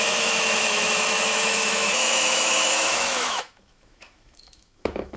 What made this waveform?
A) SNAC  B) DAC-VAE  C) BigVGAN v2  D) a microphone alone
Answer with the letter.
B